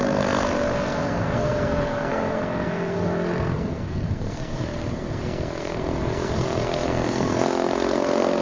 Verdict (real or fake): fake